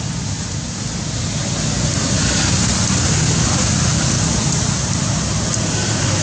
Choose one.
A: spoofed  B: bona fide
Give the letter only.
B